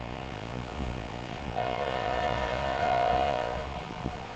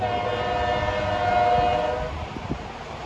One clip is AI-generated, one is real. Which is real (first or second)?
second